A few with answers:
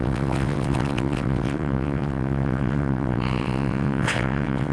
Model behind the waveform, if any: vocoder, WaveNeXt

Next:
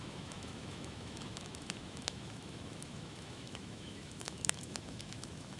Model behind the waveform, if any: autoencoder, DAC-VAE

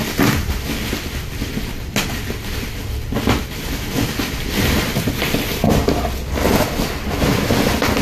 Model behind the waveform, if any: none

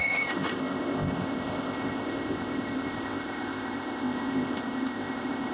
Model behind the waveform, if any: codec, ZipCodec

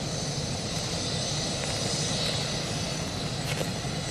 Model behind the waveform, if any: none